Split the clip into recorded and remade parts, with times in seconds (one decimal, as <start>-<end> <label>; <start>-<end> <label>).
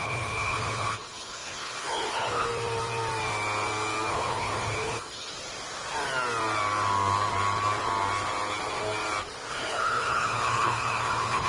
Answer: 0.0-2.5 remade; 2.5-4.1 recorded; 4.1-5.3 remade; 5.3-9.5 recorded; 9.5-11.5 remade